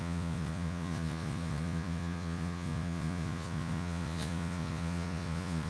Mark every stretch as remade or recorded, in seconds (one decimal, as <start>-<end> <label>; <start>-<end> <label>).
0.0-5.7 remade